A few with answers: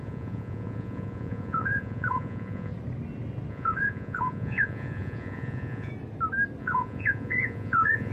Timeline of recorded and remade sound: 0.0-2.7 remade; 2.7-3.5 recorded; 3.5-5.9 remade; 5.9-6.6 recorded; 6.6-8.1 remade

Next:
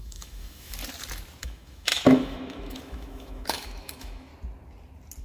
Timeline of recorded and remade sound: 0.0-0.8 remade; 0.8-1.4 recorded; 1.4-4.3 remade; 4.3-5.2 recorded

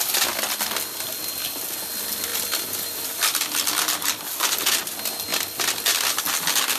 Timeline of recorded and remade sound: 0.0-2.3 recorded; 2.3-4.8 remade; 4.8-6.8 recorded